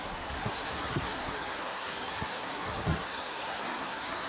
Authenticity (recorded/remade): remade